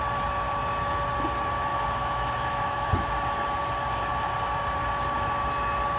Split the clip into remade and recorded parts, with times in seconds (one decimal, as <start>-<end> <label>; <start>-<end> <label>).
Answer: 0.0-1.7 recorded; 1.7-3.1 remade; 3.1-6.0 recorded